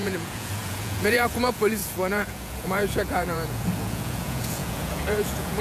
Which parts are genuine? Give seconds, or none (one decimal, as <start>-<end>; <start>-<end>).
none